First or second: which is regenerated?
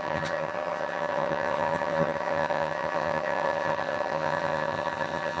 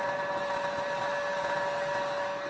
first